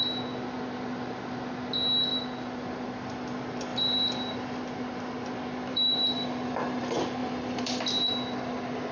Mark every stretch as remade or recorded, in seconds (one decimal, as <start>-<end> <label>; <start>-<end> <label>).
0.0-2.1 recorded; 2.1-3.1 remade; 3.1-3.7 recorded; 3.7-4.6 remade; 4.6-5.7 recorded; 5.7-6.8 remade; 6.8-7.2 recorded; 7.2-7.8 remade; 7.8-8.9 recorded